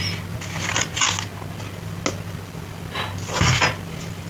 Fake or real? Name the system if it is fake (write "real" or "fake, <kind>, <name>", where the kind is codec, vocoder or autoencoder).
real